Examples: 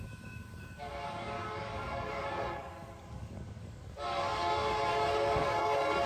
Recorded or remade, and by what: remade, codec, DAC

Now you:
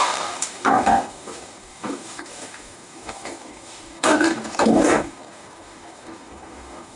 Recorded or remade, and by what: remade, codec, DAC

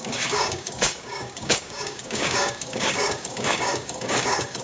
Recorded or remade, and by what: remade, codec, DAC